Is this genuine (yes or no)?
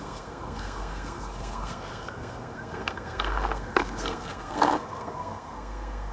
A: no